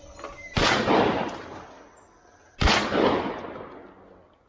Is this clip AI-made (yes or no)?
no